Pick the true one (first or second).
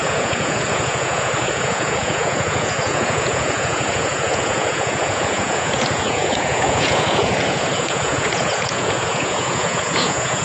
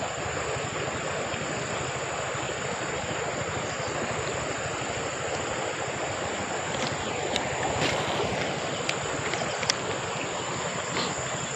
second